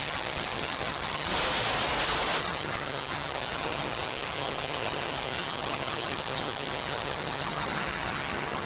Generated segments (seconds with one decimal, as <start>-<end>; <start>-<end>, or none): 0.0-1.3; 2.4-8.7